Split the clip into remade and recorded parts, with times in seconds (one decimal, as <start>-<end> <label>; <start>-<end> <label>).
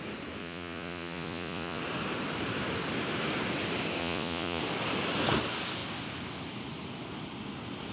0.0-0.4 recorded; 0.4-1.8 remade; 1.8-4.0 recorded; 4.0-4.6 remade; 4.6-7.9 recorded